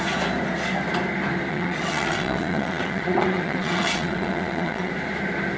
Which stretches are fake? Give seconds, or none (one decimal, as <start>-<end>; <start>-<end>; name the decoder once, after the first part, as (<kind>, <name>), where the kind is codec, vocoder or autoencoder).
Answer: 1.5-4.9 (vocoder, WaveNeXt)